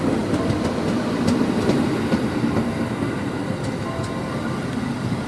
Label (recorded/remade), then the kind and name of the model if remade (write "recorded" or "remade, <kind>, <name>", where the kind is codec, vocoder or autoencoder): recorded